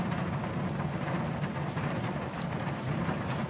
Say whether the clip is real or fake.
fake